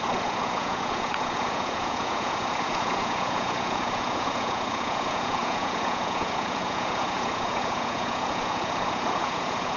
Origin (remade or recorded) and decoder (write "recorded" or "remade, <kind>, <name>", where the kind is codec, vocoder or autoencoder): remade, vocoder, Vocos